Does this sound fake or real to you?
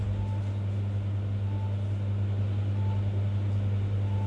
real